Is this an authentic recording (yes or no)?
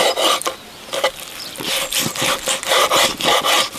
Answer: yes